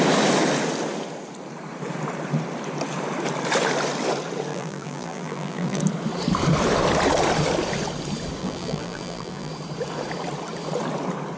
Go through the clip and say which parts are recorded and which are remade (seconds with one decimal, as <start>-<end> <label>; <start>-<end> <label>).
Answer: 0.0-4.5 recorded; 4.5-5.8 remade; 5.8-8.4 recorded; 8.4-9.5 remade; 9.5-11.4 recorded